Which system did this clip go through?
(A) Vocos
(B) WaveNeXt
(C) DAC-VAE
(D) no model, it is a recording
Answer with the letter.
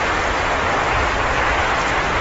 D